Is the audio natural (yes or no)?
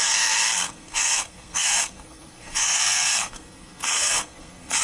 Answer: no